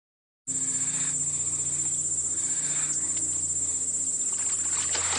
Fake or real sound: real